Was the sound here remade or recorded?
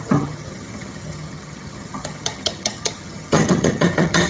remade